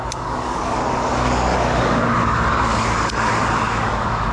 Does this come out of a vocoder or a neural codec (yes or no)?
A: yes